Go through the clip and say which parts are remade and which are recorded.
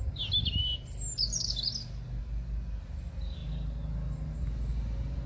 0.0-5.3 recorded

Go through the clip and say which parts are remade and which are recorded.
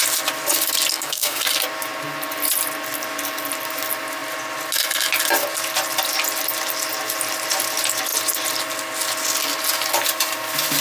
0.0-0.9 recorded; 0.9-1.4 remade; 1.4-10.8 recorded